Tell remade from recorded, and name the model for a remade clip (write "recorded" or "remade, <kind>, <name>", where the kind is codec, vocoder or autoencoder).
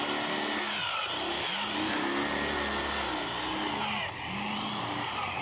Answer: recorded